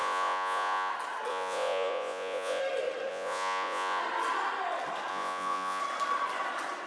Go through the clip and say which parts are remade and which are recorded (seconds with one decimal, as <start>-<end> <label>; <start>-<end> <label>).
0.0-0.9 remade; 0.9-1.3 recorded; 1.3-2.6 remade; 2.6-3.1 recorded; 3.1-4.0 remade; 4.0-5.1 recorded; 5.1-5.8 remade; 5.8-6.9 recorded